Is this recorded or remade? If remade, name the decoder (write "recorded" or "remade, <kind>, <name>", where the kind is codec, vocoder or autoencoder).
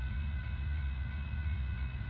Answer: remade, vocoder, Vocos